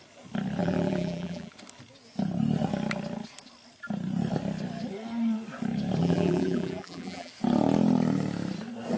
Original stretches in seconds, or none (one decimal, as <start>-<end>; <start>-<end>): 0.0-0.6; 1.5-6.0; 7.3-9.0